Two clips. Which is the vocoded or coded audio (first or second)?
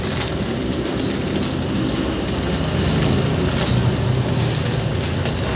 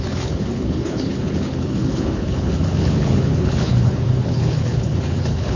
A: second